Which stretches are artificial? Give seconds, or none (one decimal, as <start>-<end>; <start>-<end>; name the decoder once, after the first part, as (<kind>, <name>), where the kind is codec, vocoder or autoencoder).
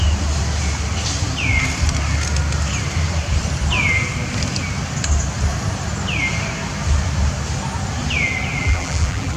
8.6-9.4 (vocoder, BigVGAN v2)